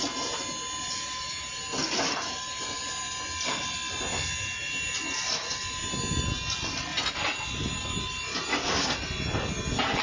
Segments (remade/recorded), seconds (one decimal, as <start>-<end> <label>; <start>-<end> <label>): 0.0-10.0 recorded